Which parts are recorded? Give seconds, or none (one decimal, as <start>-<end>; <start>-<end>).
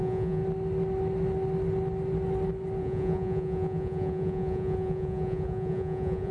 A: 0.4-2.8